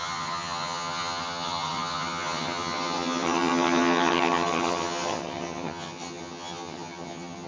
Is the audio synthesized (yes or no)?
yes